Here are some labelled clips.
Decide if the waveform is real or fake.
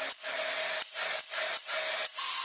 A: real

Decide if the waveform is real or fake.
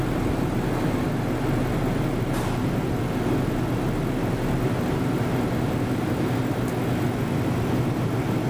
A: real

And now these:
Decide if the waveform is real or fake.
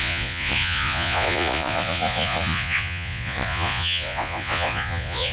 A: fake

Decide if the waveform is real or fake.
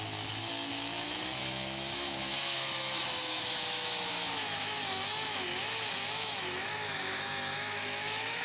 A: fake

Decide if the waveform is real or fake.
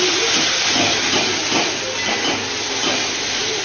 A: real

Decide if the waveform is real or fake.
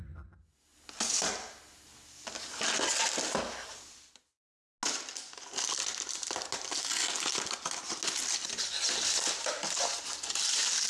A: real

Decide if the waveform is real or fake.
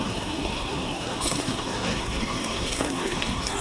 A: fake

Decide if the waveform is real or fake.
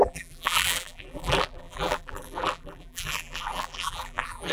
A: fake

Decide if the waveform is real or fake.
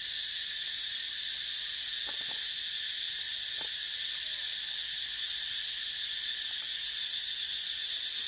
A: real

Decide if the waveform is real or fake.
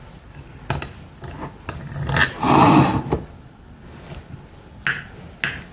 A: real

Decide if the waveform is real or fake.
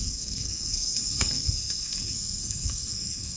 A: fake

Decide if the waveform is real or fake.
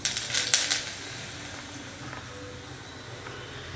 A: real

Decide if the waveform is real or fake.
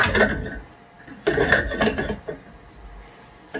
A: real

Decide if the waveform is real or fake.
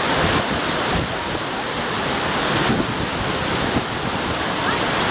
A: real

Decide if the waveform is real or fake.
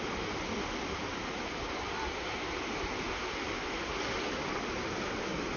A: real